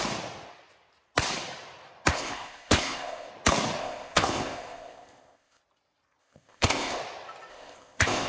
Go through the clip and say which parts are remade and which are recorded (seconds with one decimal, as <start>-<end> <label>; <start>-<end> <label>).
0.0-2.1 recorded; 2.1-3.3 remade; 3.3-3.8 recorded; 3.8-5.6 remade; 5.6-6.2 recorded; 6.2-7.0 remade; 7.0-7.5 recorded; 7.5-8.3 remade